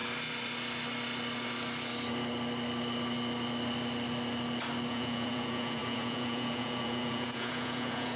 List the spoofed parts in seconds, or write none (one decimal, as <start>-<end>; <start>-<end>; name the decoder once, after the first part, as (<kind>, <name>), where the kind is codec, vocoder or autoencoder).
4.9-8.2 (vocoder, Vocos)